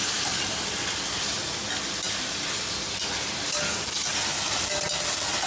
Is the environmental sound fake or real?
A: real